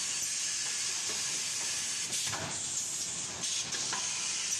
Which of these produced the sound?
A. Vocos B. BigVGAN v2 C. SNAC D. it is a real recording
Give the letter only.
D